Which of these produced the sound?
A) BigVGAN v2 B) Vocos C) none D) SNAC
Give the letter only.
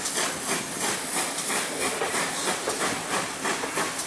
C